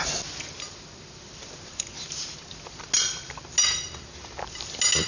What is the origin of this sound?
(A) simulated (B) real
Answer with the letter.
B